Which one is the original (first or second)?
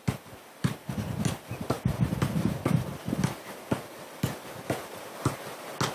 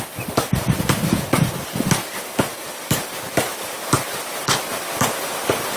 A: first